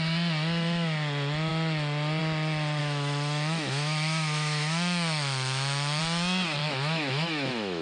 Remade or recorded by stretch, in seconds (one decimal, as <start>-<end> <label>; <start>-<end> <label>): 0.0-2.8 recorded; 2.8-6.0 remade; 6.0-6.6 recorded; 6.6-7.8 remade